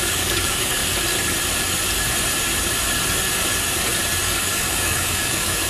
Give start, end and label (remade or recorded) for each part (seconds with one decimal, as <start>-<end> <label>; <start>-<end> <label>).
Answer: 0.0-0.8 remade; 0.8-4.2 recorded; 4.2-5.7 remade

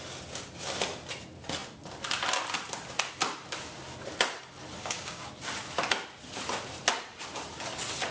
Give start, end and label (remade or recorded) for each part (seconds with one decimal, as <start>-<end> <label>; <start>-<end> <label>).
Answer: 0.0-4.8 recorded; 4.8-5.3 remade; 5.3-8.1 recorded

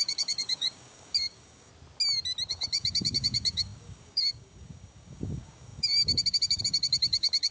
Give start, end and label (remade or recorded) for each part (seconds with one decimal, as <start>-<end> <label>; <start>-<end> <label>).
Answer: 0.0-1.7 remade; 1.7-2.5 recorded; 2.5-7.5 remade

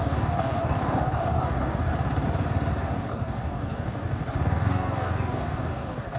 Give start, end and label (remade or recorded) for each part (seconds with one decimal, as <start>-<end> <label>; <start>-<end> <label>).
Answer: 0.0-1.9 remade; 1.9-2.9 recorded; 2.9-6.2 remade